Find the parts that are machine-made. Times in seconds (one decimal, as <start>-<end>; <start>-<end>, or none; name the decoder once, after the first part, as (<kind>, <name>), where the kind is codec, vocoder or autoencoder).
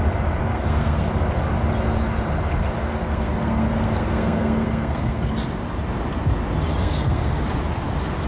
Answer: 0.5-1.1 (codec, SNAC); 2.9-5.3; 6.8-7.4